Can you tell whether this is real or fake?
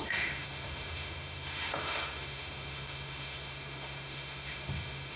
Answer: fake